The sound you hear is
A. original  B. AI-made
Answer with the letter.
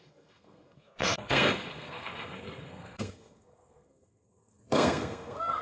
B